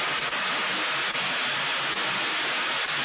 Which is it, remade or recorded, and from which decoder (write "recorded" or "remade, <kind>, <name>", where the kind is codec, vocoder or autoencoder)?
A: recorded